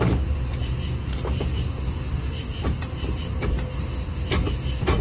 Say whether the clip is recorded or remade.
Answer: recorded